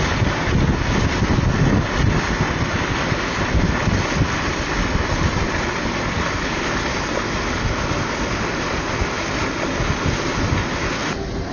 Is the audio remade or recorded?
recorded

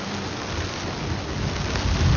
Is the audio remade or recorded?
recorded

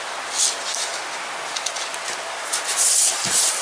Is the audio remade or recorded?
recorded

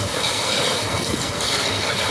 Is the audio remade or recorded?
remade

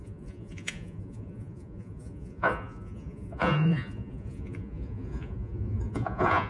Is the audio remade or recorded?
remade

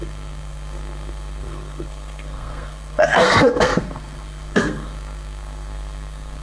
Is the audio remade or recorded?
remade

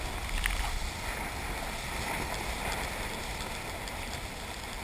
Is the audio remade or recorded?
recorded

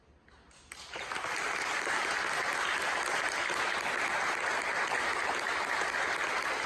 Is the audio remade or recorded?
recorded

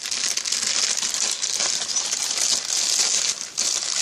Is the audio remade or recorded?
recorded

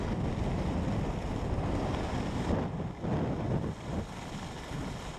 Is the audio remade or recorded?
recorded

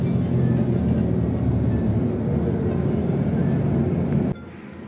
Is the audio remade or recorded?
recorded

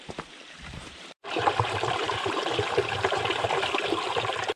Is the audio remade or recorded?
remade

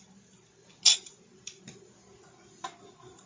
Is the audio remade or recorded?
recorded